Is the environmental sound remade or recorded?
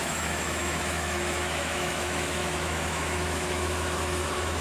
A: remade